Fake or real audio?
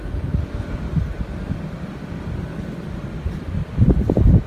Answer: fake